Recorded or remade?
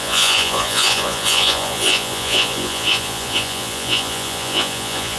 remade